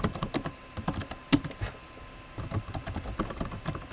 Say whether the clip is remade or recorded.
recorded